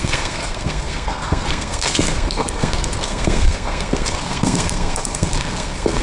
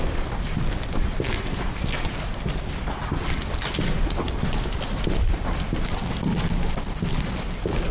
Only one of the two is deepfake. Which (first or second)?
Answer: first